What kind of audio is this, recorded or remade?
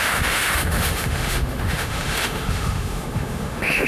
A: remade